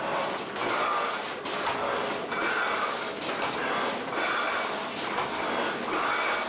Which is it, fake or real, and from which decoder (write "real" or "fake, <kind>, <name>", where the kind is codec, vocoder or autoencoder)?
real